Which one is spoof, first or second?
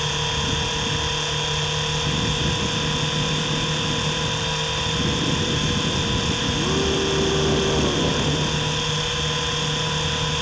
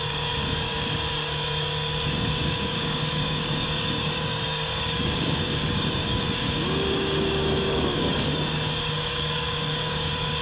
second